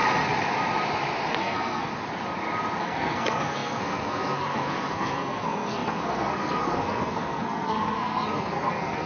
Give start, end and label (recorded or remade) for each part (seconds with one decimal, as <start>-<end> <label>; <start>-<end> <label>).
0.0-1.4 recorded; 1.4-1.9 remade; 1.9-2.8 recorded; 2.8-9.1 remade